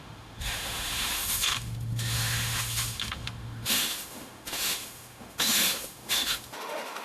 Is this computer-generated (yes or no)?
yes